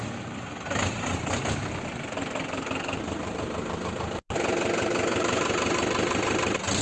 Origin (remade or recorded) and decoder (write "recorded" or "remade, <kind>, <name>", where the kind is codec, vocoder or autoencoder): recorded